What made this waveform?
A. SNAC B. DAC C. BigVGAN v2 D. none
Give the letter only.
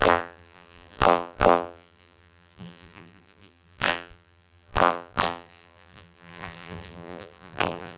C